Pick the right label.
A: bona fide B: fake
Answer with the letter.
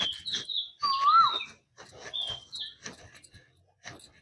A